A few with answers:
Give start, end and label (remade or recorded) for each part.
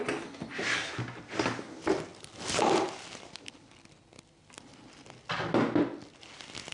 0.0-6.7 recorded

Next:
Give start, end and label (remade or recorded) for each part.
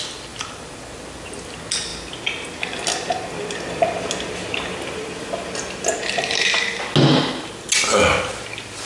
0.0-8.9 recorded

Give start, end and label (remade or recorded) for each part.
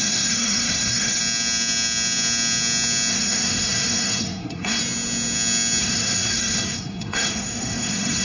0.0-1.2 remade; 1.2-3.1 recorded; 3.1-4.8 remade; 4.8-5.8 recorded; 5.8-8.2 remade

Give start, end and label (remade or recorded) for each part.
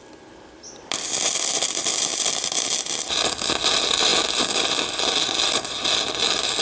0.0-6.6 recorded